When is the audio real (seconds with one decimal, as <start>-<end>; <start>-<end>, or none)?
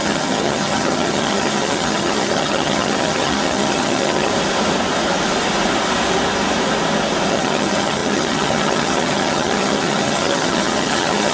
4.3-7.3